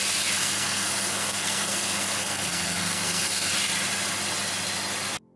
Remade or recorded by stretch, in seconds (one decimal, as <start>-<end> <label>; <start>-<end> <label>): 0.0-0.4 recorded; 0.4-3.5 remade; 3.5-5.4 recorded